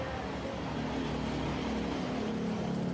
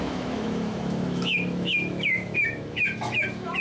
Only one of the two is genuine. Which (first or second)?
first